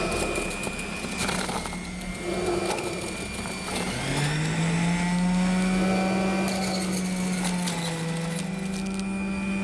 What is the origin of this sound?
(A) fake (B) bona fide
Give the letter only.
B